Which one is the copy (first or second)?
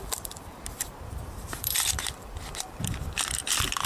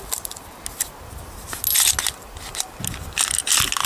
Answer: first